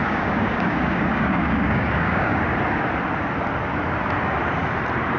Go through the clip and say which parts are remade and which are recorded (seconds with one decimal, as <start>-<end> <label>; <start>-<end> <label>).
0.0-2.4 remade; 2.4-5.2 recorded